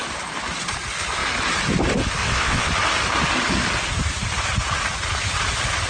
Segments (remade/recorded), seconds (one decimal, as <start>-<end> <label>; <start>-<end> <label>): 0.0-2.2 recorded; 2.2-2.7 remade; 2.7-5.9 recorded